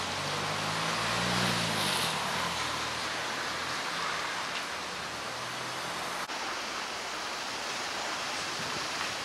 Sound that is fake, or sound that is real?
real